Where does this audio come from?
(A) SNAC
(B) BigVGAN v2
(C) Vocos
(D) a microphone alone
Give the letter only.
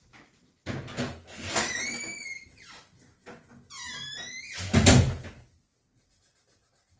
D